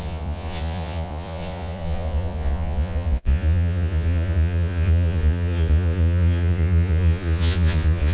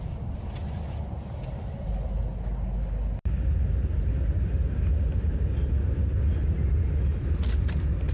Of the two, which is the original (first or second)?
second